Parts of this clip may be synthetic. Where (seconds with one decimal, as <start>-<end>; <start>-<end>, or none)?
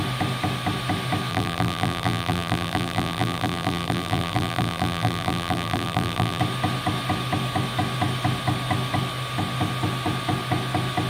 1.3-6.4